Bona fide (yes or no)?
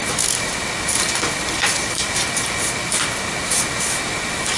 yes